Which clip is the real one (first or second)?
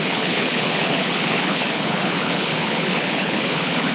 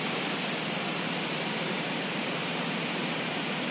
second